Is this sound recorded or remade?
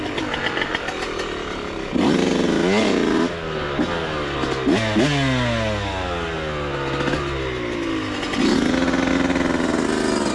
recorded